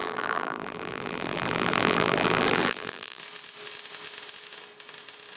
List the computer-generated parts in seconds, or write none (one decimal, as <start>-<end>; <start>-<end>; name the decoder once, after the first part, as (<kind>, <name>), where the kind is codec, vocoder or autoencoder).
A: 0.0-3.2 (vocoder, BigVGAN v2)